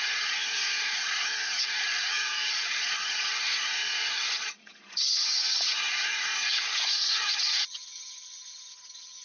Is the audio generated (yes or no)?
yes